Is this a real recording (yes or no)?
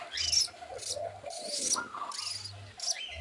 yes